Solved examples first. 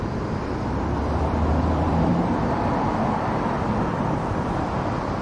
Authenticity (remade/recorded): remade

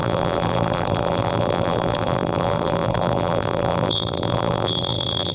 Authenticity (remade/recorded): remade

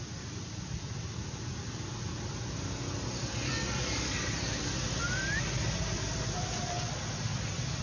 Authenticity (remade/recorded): recorded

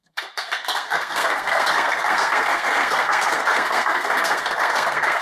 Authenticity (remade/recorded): remade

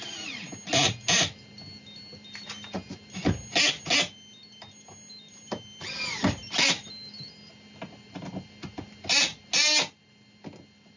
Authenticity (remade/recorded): recorded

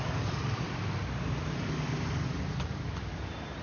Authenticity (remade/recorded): recorded